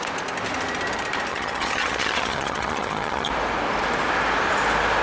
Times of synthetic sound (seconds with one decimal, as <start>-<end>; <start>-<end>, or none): 1.3-3.3